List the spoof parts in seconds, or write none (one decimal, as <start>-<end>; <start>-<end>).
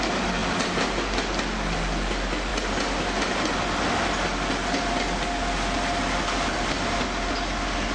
none